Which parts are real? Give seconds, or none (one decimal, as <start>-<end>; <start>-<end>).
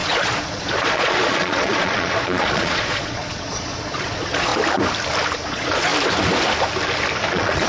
4.5-5.5; 5.9-7.3